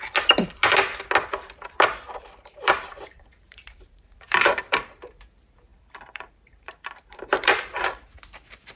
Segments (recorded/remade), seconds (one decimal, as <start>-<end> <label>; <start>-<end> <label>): 0.0-1.3 recorded; 1.3-5.1 remade; 5.1-5.7 recorded; 5.7-8.1 remade; 8.1-8.8 recorded